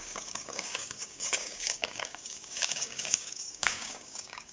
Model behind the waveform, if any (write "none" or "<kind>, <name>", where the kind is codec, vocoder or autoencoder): codec, DAC